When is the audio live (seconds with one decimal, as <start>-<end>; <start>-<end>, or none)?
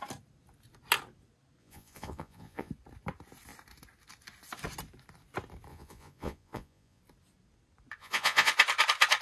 0.0-1.6; 2.7-5.7; 7.0-8.0; 8.5-9.2